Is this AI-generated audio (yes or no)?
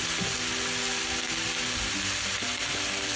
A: no